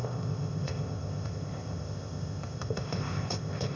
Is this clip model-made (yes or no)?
yes